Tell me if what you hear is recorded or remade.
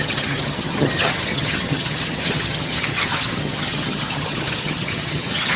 remade